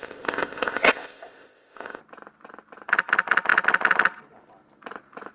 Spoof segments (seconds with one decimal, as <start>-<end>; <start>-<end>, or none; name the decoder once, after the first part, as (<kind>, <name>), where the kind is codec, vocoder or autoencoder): 0.0-2.0 (codec, ZipCodec)